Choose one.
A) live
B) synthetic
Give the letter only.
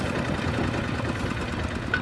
A